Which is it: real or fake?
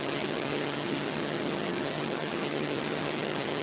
fake